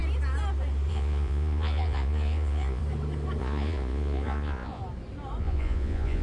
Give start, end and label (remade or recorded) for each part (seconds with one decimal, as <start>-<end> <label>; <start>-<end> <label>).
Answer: 0.0-0.9 recorded; 0.9-2.8 remade; 2.8-3.4 recorded; 3.4-4.8 remade; 4.8-5.4 recorded; 5.4-6.2 remade